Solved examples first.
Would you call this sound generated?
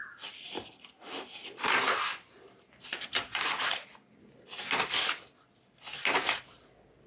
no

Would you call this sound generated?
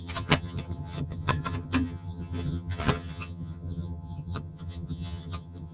yes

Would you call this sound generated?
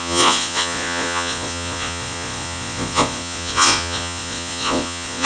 yes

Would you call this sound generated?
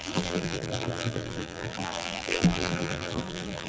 yes